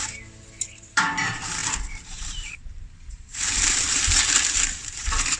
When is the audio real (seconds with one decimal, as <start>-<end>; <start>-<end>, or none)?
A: 0.0-0.7